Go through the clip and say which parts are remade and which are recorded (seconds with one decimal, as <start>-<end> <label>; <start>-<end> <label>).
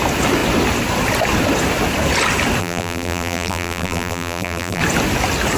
0.0-2.6 recorded; 2.6-4.8 remade; 4.8-5.6 recorded